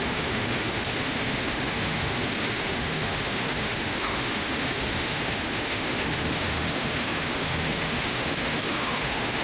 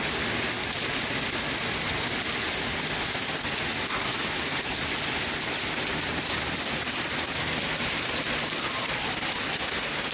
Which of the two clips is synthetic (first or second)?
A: first